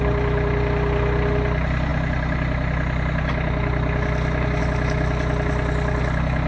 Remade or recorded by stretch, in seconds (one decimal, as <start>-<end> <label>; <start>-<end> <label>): 0.0-6.5 recorded